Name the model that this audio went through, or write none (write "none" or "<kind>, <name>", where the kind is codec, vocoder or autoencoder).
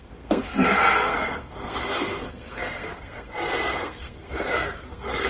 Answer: codec, SNAC